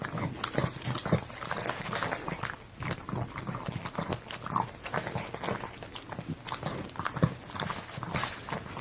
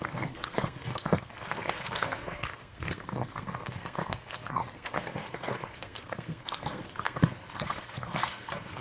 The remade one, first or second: second